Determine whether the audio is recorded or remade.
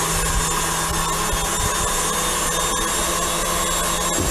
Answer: recorded